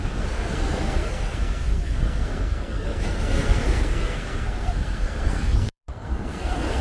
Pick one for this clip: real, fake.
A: fake